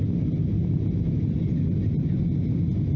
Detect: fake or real real